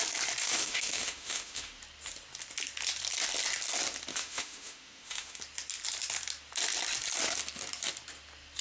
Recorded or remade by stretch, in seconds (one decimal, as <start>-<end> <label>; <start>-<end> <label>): 0.0-0.4 recorded; 0.4-1.8 remade; 1.8-4.1 recorded; 4.1-5.4 remade; 5.4-8.6 recorded